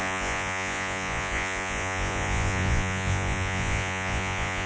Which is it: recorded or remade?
remade